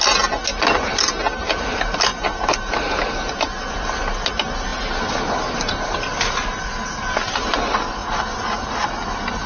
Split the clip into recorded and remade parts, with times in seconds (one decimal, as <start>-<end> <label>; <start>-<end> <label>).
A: 0.0-9.5 recorded